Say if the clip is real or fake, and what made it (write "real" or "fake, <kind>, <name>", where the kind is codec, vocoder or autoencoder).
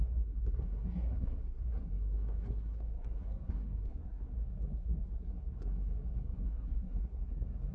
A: fake, codec, SNAC